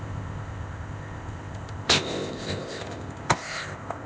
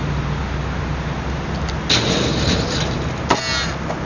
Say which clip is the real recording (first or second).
second